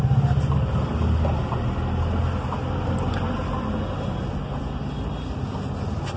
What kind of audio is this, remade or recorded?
recorded